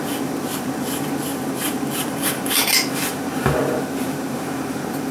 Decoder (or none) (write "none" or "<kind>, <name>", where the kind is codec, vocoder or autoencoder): vocoder, BigVGAN v2